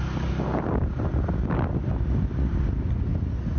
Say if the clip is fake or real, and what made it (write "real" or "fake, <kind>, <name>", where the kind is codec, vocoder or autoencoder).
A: real